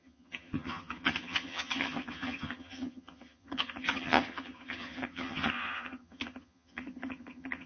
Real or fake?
fake